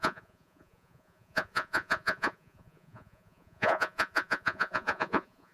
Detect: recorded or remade remade